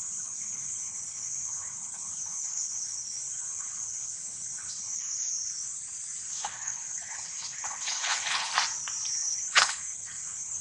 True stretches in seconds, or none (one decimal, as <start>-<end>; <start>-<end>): 5.3-6.3; 8.5-9.2